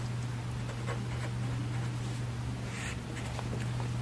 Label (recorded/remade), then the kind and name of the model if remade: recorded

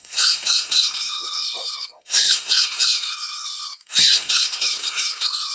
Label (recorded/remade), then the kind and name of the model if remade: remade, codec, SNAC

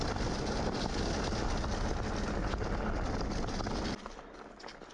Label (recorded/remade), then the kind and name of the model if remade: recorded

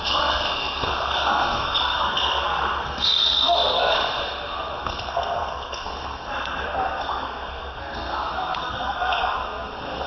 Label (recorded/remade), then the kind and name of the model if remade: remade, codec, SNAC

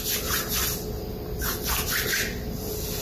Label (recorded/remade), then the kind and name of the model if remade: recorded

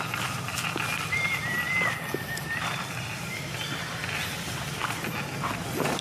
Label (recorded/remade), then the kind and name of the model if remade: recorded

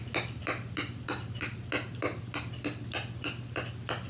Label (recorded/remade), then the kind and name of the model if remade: recorded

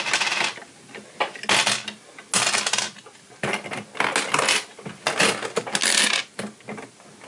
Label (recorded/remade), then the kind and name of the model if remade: recorded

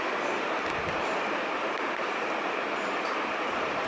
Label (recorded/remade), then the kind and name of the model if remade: recorded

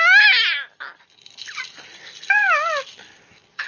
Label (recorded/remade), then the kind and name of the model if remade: recorded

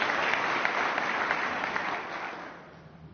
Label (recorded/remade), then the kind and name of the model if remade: recorded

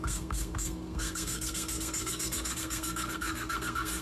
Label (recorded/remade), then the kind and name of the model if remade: remade, codec, SNAC